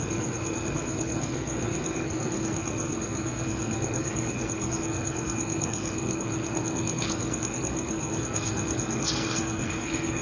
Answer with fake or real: fake